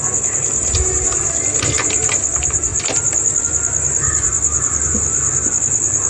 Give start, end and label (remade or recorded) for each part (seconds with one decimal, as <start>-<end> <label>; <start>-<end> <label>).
0.0-6.1 recorded